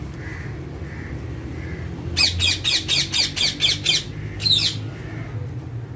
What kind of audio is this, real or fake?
real